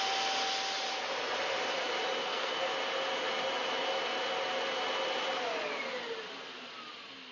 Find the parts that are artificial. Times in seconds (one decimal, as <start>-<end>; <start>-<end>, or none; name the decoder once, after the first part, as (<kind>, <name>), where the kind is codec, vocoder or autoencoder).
2.2-2.7 (codec, SNAC)

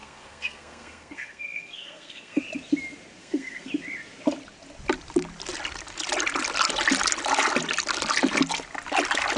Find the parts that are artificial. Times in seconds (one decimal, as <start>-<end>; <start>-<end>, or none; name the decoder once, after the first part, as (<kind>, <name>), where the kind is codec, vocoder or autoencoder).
0.0-2.4 (codec, SNAC); 3.2-3.7